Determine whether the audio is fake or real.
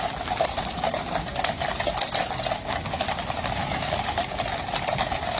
real